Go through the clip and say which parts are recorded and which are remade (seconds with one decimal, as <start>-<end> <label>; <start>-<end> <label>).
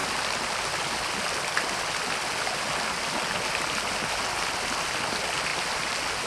0.0-6.3 recorded